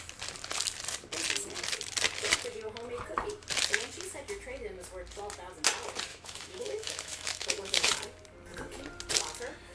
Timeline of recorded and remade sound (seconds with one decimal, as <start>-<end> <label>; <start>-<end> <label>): 0.0-6.1 recorded; 6.1-7.9 remade; 7.9-9.7 recorded